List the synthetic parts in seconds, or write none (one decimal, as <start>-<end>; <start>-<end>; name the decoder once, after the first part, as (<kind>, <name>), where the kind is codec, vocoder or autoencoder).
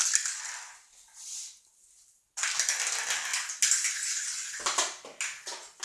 none